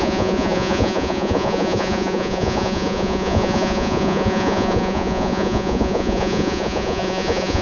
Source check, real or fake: fake